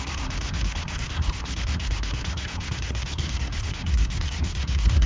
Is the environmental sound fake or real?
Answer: fake